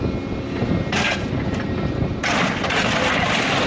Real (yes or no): yes